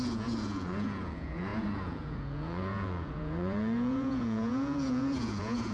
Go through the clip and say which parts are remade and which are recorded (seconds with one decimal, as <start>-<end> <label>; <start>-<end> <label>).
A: 0.0-5.7 remade